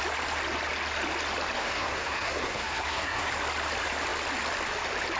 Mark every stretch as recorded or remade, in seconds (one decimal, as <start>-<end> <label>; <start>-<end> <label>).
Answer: 0.0-1.6 recorded; 1.6-3.3 remade; 3.3-5.2 recorded